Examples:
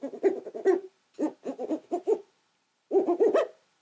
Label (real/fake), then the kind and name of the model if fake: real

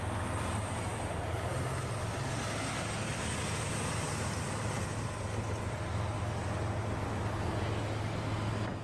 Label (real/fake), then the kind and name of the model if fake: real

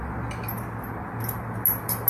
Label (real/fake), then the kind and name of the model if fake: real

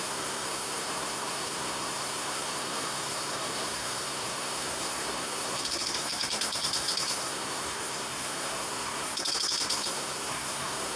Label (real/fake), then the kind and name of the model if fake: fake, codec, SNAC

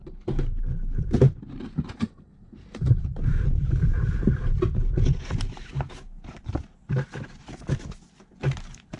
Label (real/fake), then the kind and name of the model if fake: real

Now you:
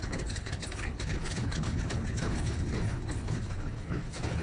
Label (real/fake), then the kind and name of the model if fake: fake, codec, HILCodec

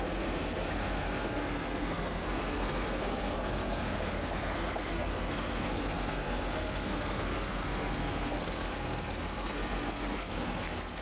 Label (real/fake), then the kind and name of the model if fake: fake, codec, SNAC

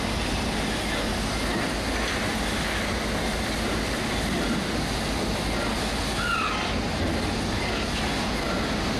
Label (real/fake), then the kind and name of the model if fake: real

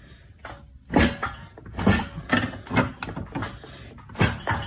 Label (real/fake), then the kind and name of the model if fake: real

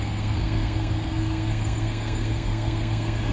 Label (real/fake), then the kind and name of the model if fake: fake, codec, SNAC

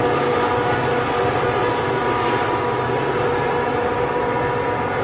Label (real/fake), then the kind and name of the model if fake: real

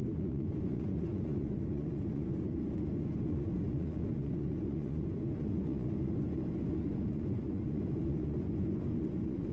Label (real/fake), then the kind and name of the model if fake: fake, vocoder, Vocos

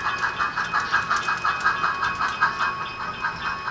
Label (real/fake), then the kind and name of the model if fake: real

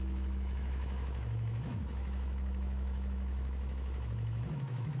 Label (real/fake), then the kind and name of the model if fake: fake, autoencoder, DAC-VAE